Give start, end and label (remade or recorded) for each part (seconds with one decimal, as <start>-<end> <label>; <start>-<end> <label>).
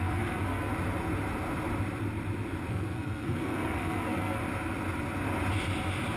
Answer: 0.0-0.7 remade; 0.7-2.7 recorded; 2.7-4.4 remade; 4.4-6.2 recorded